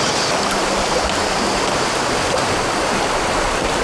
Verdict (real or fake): fake